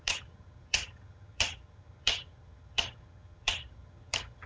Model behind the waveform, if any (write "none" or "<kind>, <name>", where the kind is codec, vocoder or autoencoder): vocoder, HiFi-GAN